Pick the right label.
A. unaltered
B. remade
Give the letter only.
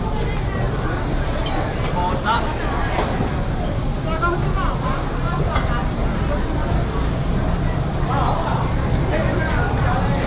A